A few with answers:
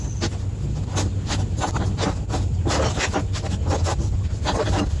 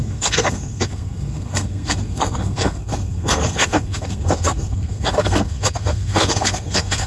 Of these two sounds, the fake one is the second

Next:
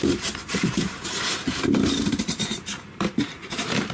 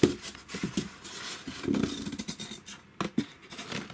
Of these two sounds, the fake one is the first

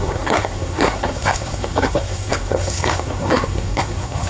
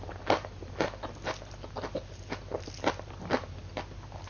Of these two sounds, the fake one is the first